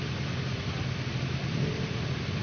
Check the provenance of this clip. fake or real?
real